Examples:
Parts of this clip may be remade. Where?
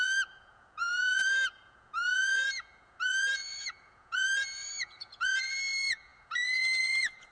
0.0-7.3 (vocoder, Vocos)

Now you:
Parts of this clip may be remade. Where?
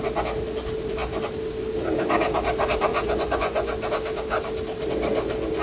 2.9-3.7 (vocoder, Vocos)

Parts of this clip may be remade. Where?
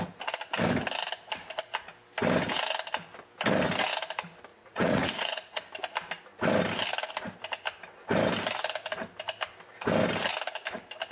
4.5-5.6 (vocoder, Vocos)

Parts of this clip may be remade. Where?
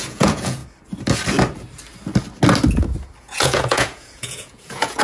0.0-0.6 (vocoder, Vocos); 3.2-5.0